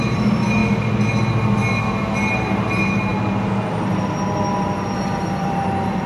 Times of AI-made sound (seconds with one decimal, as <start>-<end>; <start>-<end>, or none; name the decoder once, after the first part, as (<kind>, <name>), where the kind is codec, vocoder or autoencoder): 0.0-0.6 (vocoder, BigVGAN v2); 2.3-3.1; 5.0-6.1